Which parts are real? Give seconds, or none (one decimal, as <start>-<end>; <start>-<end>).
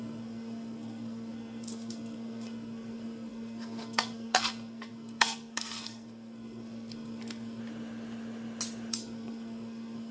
7.6-8.9